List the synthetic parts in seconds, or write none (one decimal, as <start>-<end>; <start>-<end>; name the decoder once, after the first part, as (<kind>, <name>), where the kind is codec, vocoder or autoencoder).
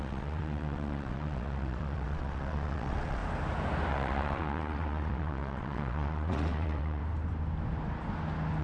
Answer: 0.0-3.2 (vocoder, WaveNeXt); 3.9-7.0